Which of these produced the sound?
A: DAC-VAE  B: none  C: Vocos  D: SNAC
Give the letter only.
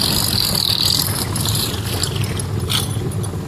B